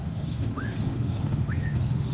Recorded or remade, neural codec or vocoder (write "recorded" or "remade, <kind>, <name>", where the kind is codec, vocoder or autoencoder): remade, autoencoder, DAC-VAE